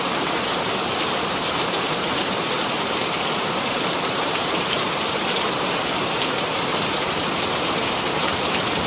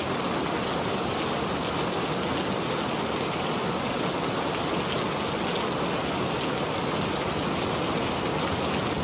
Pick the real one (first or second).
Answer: second